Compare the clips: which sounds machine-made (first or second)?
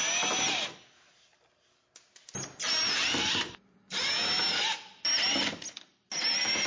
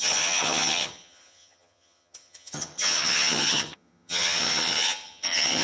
second